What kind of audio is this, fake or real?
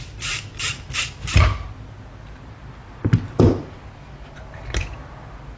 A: real